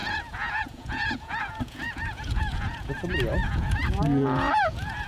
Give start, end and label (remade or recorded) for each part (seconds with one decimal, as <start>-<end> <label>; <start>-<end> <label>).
0.0-2.9 remade; 2.9-3.4 recorded; 3.4-5.1 remade